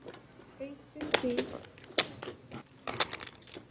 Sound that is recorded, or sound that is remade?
recorded